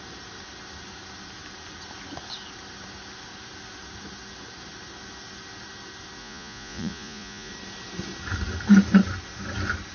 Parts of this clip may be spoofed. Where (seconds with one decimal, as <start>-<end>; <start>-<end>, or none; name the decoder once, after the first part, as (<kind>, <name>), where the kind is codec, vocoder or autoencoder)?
6.2-7.5 (vocoder, Vocos)